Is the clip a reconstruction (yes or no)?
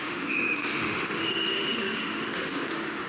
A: yes